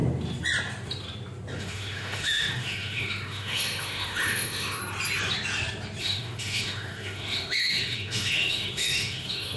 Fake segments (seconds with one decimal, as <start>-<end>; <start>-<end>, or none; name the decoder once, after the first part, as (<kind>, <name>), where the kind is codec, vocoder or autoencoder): 1.6-4.8 (autoencoder, DAC-VAE); 6.0-9.6